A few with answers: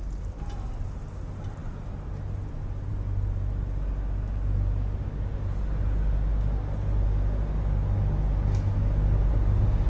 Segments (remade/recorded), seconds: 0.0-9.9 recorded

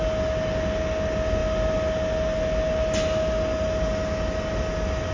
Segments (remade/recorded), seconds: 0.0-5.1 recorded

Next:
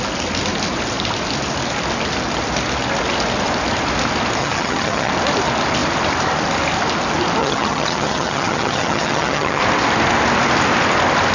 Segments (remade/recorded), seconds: 0.0-4.4 recorded; 4.4-5.1 remade; 5.1-7.4 recorded; 7.4-9.6 remade; 9.6-11.3 recorded

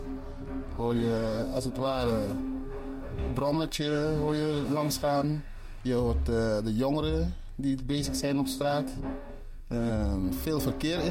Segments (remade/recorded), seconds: 0.0-0.7 recorded; 0.7-5.8 remade; 5.8-7.8 recorded; 7.8-9.9 remade; 9.9-11.1 recorded